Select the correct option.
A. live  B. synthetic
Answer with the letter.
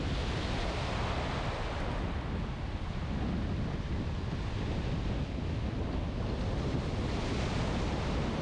A